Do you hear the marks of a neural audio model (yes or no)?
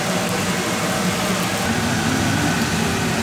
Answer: no